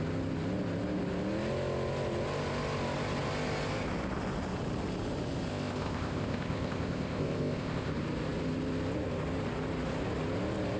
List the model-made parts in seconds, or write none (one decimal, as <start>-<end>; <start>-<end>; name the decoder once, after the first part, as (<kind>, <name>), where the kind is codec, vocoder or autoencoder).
5.5-7.9 (codec, ZipCodec)

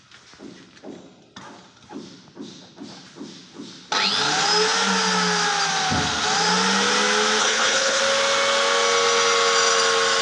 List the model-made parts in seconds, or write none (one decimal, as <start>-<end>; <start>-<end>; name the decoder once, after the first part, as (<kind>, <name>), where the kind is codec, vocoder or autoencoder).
7.4-8.0 (codec, HILCodec)